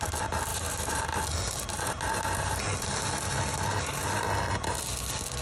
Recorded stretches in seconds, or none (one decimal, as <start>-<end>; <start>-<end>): 0.0-0.5; 1.2-5.4